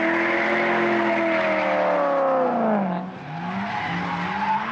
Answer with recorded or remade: recorded